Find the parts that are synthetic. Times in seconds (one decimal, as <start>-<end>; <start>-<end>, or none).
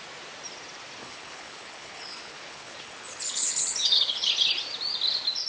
1.0-4.3